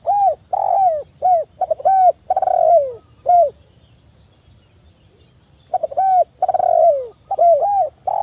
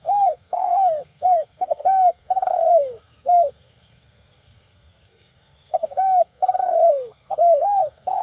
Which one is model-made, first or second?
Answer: second